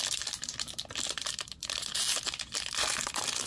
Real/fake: real